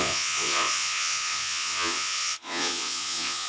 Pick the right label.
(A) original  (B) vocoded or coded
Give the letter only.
B